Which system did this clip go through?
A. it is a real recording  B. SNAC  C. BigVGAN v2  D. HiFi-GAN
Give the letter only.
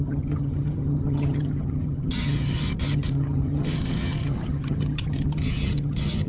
D